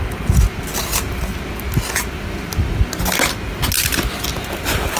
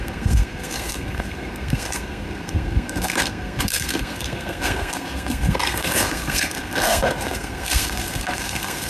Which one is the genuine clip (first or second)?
first